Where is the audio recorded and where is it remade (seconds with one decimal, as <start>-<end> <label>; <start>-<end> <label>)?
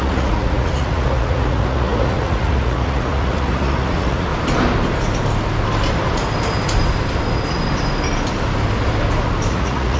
0.0-4.3 remade; 4.3-9.5 recorded; 9.5-10.0 remade